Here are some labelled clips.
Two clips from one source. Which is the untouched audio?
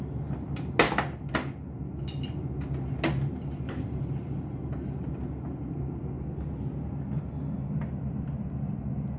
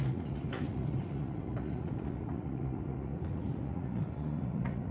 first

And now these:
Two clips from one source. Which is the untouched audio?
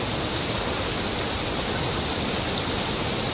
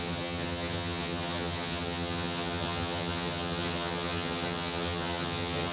first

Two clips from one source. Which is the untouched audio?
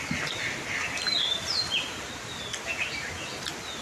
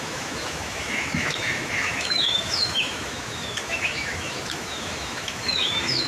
first